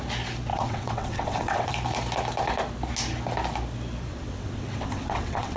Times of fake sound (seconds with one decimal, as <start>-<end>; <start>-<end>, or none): 0.5-1.7; 4.1-5.6